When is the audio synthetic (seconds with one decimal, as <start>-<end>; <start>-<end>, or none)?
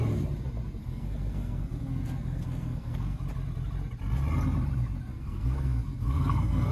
0.8-3.2; 5.1-6.7